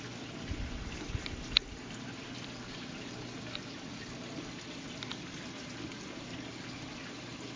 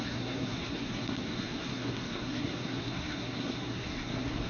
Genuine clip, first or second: first